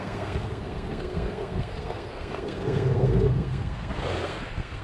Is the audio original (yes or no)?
no